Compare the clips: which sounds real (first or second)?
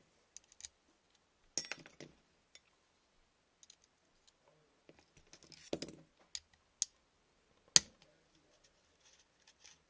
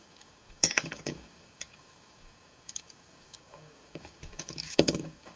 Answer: first